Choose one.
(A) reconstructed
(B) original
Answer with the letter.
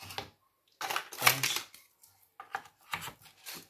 B